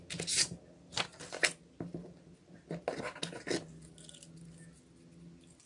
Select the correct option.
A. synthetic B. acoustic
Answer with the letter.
B